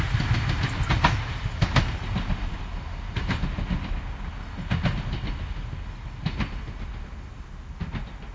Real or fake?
real